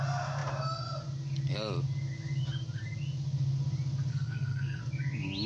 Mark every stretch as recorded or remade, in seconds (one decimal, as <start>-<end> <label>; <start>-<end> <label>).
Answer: 0.0-4.1 recorded; 4.1-4.8 remade; 4.8-5.5 recorded